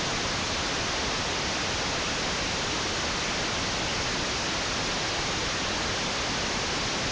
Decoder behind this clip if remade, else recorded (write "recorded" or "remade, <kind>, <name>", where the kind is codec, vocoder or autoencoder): recorded